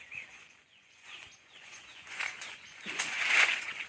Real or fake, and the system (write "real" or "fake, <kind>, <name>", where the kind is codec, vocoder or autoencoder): fake, vocoder, Vocos